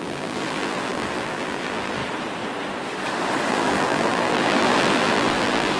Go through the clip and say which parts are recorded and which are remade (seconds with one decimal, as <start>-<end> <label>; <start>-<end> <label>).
0.0-2.0 remade; 2.0-3.5 recorded; 3.5-5.8 remade